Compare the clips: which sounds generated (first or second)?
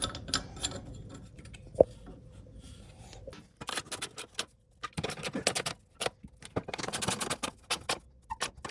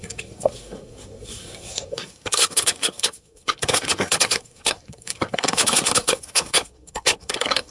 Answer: second